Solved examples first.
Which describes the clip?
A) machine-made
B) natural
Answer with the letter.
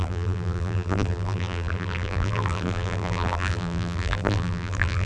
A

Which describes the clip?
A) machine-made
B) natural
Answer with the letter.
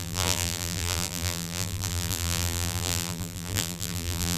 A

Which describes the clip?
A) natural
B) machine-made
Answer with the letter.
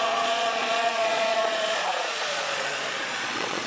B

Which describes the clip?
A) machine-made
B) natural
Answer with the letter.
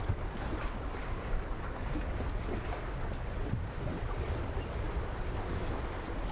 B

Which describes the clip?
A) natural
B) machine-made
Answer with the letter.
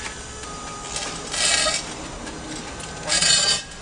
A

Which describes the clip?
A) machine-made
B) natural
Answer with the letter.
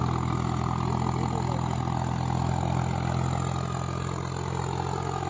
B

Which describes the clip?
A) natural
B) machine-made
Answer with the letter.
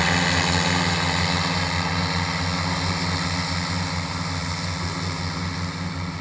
A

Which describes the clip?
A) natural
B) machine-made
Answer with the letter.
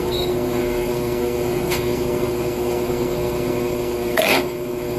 B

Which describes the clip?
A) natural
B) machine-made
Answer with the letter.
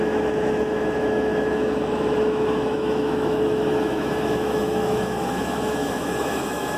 B